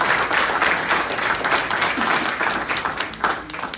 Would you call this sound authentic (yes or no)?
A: yes